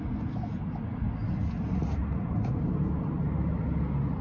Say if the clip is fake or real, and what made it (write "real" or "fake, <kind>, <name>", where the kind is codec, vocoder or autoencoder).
real